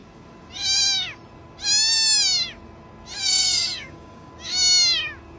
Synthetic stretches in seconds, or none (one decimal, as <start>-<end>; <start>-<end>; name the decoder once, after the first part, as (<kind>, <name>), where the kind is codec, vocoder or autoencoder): 3.2-4.3 (codec, DAC)